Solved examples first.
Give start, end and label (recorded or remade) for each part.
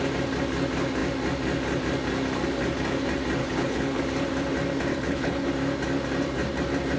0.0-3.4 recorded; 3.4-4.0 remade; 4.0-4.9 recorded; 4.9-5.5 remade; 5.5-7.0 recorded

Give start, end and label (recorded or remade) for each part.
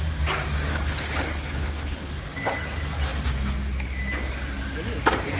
0.0-0.7 recorded; 0.7-2.1 remade; 2.1-5.4 recorded